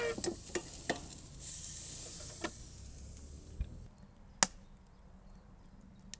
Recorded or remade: recorded